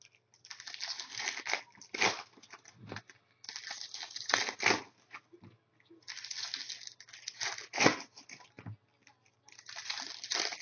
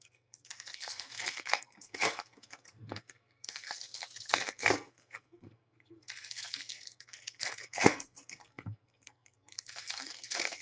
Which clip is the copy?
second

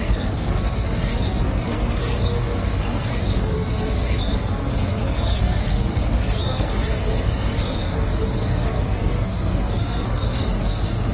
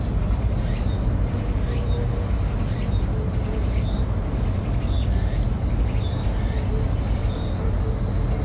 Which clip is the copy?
first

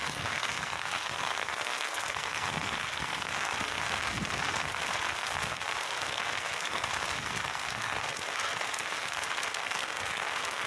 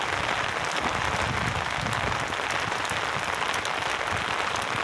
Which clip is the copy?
first